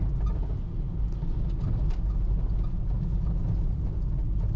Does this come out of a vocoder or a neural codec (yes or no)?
no